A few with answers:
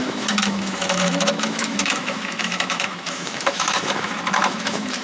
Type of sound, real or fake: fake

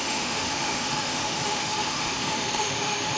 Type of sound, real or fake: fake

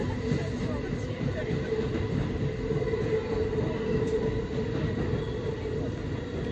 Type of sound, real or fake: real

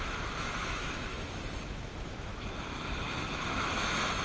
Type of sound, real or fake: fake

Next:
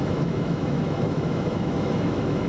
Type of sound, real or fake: fake